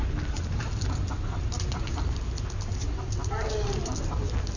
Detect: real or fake real